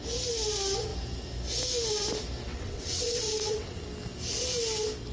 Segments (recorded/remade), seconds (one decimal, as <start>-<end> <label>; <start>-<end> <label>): 0.0-2.5 recorded; 2.5-3.8 remade; 3.8-5.1 recorded